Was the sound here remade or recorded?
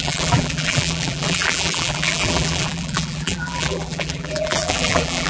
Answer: remade